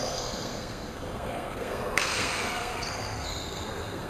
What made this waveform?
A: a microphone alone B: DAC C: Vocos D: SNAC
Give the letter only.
D